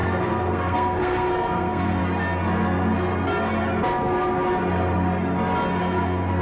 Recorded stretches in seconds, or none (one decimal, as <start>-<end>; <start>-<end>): 2.0-5.8